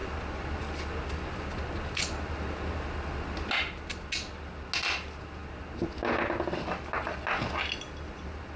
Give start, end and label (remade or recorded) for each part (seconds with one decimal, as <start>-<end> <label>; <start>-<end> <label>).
0.0-8.6 recorded